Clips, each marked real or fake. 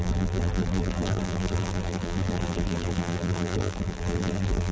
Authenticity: fake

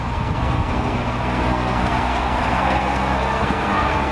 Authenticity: fake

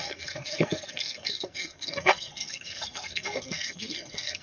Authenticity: fake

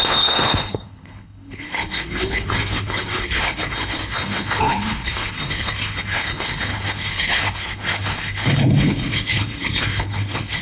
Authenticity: fake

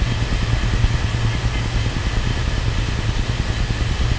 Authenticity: real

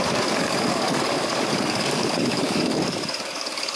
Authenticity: fake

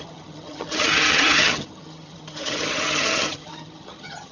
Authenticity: fake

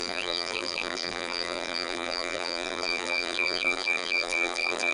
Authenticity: fake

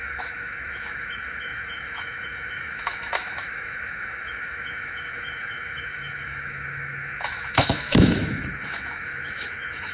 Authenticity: fake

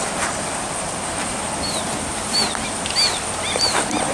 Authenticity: real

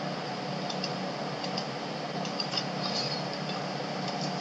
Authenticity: real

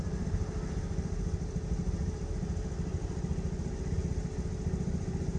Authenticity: real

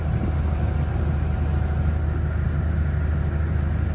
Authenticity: real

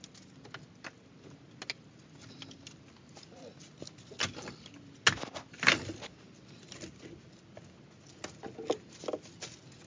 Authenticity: real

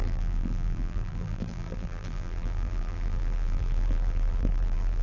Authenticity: fake